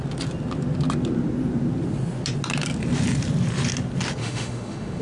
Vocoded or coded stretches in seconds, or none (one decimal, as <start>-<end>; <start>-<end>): 4.2-5.0